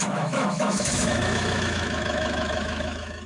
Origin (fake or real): fake